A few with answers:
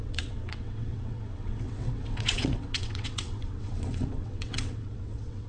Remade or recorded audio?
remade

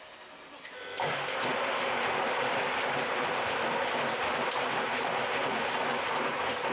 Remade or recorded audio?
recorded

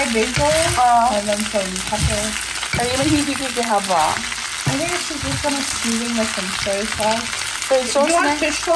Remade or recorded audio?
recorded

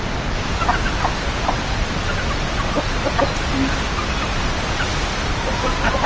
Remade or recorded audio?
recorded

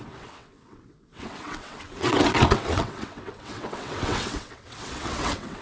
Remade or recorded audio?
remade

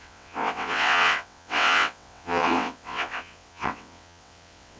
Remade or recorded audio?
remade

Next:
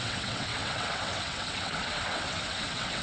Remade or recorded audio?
remade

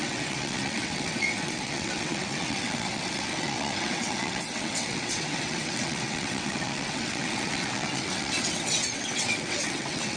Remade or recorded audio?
remade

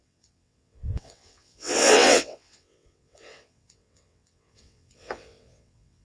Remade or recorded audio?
remade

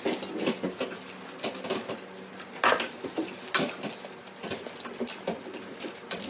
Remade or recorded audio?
recorded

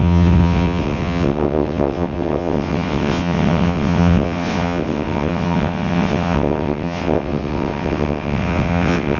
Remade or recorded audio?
remade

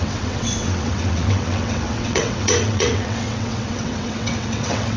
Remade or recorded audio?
remade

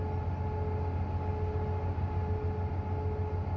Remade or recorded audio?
recorded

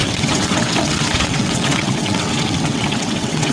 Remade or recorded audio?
remade